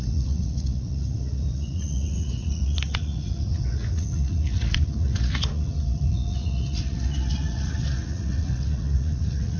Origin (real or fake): fake